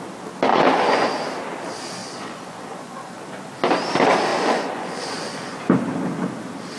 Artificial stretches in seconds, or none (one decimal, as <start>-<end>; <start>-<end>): 0.5-1.1; 2.0-3.2; 4.3-5.6